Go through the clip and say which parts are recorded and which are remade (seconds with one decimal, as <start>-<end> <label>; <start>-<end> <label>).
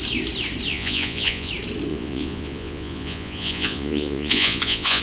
0.0-0.7 recorded; 0.7-1.5 remade; 1.5-1.9 recorded; 1.9-5.0 remade